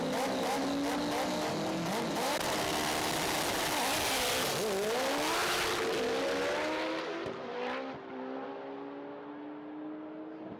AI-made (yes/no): no